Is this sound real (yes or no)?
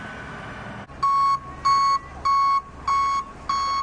yes